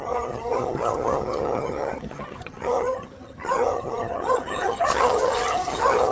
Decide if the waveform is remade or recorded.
remade